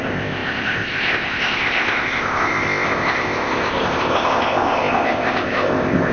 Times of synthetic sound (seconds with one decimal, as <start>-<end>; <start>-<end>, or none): 0.0-6.1